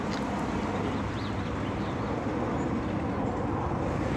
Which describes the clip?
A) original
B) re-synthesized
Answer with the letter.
A